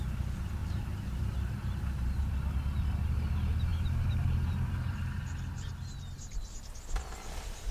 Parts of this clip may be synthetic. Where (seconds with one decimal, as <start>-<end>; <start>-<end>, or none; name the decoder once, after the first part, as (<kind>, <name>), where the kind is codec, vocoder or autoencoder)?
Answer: 0.6-2.2 (vocoder, BigVGAN v2); 3.7-5.7; 7.1-7.7